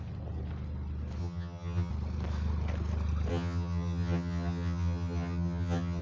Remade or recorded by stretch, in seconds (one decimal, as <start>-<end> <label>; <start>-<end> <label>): 0.0-1.2 recorded; 1.2-1.9 remade; 1.9-3.3 recorded; 3.3-6.0 remade